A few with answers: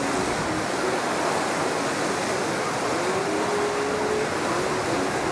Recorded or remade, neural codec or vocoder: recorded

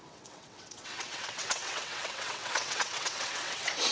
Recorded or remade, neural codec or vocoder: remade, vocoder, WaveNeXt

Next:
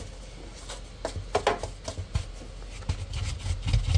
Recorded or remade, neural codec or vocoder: recorded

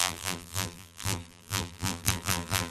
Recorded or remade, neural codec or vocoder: remade, vocoder, BigVGAN v2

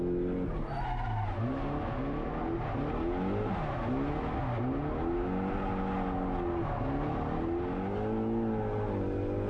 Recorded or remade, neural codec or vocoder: recorded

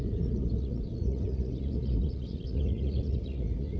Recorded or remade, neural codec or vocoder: remade, vocoder, Vocos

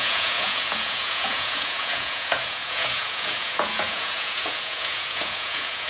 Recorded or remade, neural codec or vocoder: remade, vocoder, Vocos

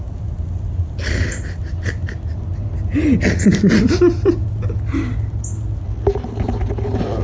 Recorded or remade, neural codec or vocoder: recorded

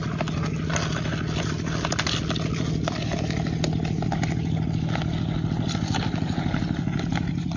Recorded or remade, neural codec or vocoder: recorded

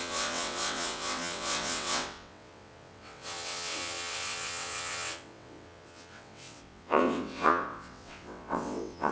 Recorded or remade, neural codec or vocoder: remade, vocoder, WaveNeXt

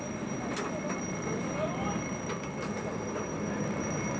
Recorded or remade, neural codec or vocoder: recorded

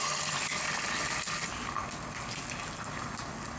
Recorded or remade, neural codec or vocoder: recorded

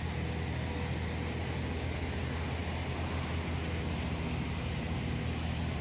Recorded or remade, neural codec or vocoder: recorded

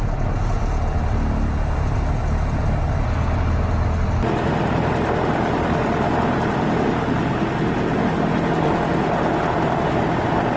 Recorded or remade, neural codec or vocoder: recorded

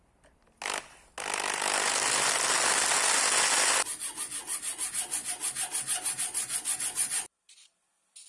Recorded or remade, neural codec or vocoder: recorded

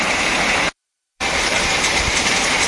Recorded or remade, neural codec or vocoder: remade, vocoder, BigVGAN v2